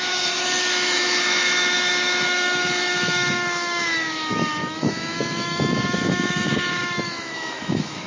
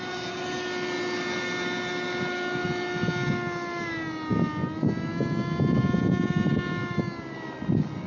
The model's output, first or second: first